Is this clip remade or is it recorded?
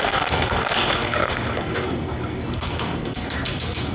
remade